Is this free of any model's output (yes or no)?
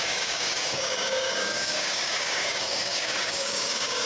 no